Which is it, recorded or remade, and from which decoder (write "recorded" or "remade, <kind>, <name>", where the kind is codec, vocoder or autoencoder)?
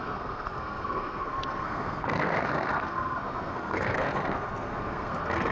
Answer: remade, codec, SNAC